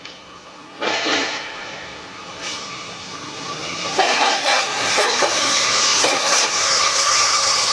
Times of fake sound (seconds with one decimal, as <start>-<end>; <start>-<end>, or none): 0.0-7.7

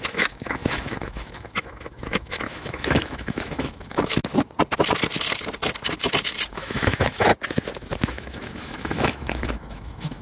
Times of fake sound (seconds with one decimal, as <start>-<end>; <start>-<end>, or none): 0.0-4.2; 6.5-7.3; 8.1-10.2

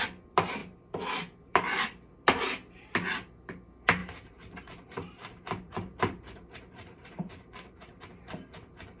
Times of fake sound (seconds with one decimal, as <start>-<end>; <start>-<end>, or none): 4.0-8.0